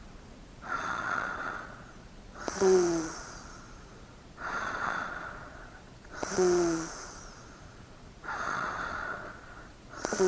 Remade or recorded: remade